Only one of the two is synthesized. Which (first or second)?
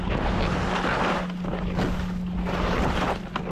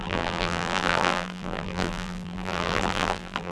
second